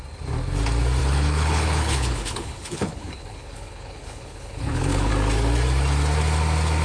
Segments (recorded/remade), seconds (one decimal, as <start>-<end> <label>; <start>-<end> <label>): 0.0-1.0 recorded; 1.0-5.1 remade; 5.1-6.8 recorded